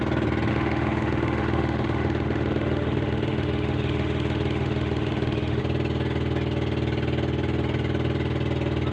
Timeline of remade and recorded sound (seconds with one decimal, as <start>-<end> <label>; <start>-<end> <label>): 0.0-0.5 recorded; 0.5-5.6 remade; 5.6-8.9 recorded

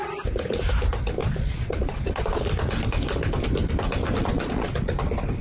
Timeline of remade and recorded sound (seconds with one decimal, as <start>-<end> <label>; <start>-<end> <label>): 0.0-1.2 recorded; 1.2-2.4 remade; 2.4-4.2 recorded; 4.2-4.9 remade; 4.9-5.4 recorded

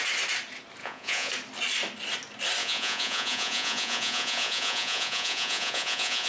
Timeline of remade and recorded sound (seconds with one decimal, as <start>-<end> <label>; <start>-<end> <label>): 0.0-0.8 recorded; 0.8-1.3 remade; 1.3-2.6 recorded; 2.6-6.3 remade

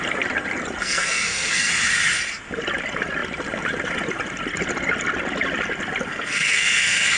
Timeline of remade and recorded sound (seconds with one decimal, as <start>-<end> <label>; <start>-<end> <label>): 0.0-0.8 recorded; 0.8-1.7 remade; 1.7-6.1 recorded; 6.1-7.2 remade

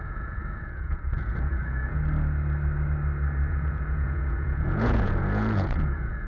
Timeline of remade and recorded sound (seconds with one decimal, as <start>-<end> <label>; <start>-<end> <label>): 0.0-2.0 remade; 2.0-3.5 recorded; 3.5-6.3 remade

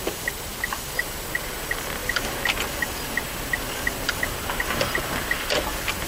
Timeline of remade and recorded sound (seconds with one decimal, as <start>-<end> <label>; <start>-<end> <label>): 0.0-6.1 recorded

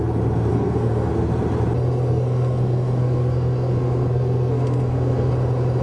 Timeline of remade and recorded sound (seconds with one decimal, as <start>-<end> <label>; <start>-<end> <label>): 0.0-0.5 recorded; 0.5-1.1 remade; 1.1-2.1 recorded; 2.1-5.3 remade; 5.3-5.8 recorded

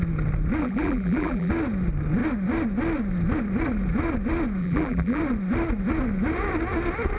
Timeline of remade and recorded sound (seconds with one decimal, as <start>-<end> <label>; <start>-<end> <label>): 0.0-0.6 recorded; 0.6-1.5 remade; 1.5-4.6 recorded; 4.6-5.2 remade; 5.2-7.2 recorded